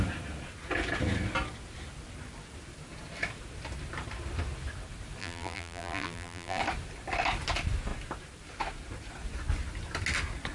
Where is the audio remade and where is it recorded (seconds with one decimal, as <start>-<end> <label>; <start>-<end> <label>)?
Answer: 0.0-5.2 recorded; 5.2-6.6 remade; 6.6-10.5 recorded